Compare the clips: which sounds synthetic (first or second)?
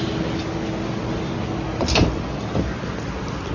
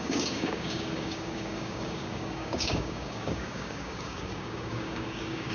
second